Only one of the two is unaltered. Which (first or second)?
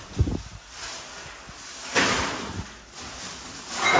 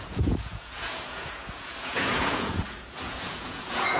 first